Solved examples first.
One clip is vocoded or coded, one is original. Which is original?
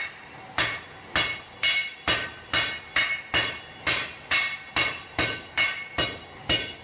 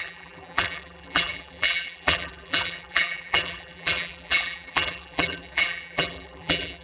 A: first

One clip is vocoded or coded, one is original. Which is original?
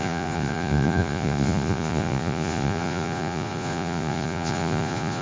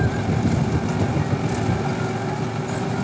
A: second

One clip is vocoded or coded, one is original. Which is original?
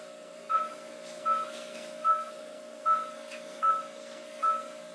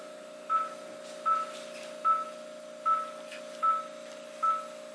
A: second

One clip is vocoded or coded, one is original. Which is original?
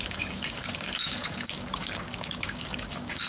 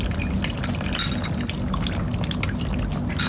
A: second